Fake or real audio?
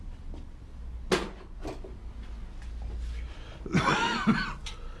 real